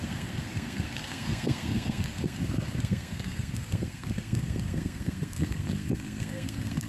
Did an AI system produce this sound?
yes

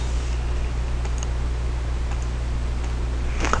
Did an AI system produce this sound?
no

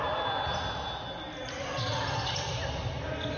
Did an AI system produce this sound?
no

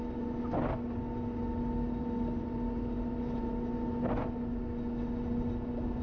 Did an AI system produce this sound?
no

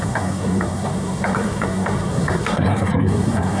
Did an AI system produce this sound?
yes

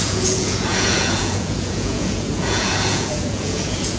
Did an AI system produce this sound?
yes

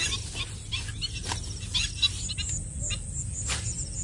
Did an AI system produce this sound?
no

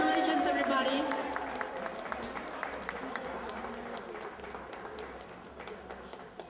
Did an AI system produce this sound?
no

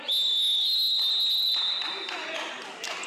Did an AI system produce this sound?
no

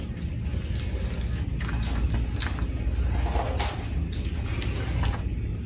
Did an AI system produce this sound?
no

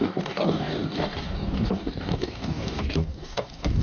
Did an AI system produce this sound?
yes